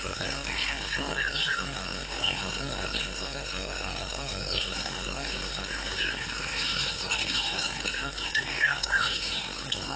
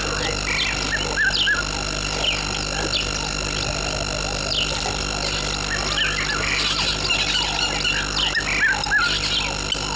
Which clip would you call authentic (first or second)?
second